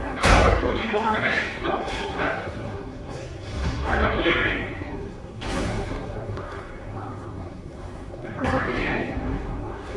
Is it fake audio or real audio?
fake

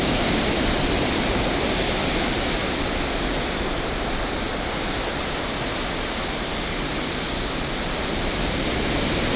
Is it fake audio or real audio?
real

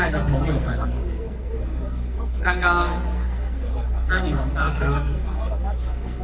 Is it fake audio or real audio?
fake